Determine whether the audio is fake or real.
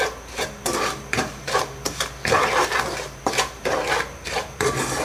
fake